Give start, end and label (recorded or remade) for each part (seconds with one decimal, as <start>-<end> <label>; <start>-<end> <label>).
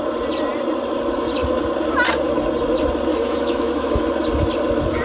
0.0-3.1 recorded; 3.1-4.0 remade; 4.0-5.0 recorded